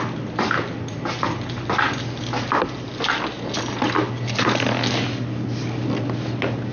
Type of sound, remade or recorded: recorded